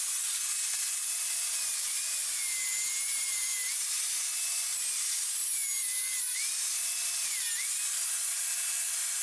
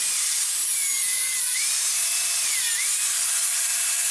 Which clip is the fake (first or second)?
second